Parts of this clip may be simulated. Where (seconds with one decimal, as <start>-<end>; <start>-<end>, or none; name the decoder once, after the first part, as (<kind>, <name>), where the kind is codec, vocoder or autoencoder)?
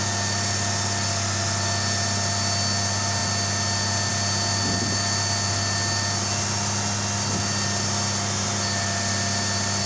none